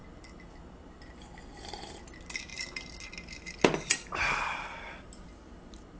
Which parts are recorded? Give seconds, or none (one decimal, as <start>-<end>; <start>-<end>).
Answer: 0.0-6.0